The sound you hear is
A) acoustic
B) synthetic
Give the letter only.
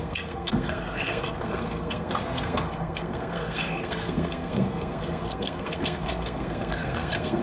B